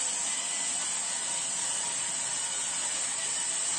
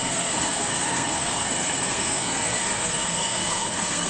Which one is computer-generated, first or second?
second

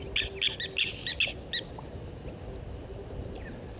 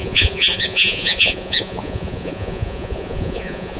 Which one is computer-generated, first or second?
second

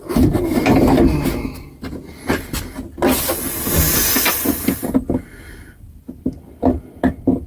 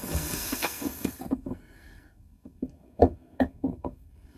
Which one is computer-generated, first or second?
second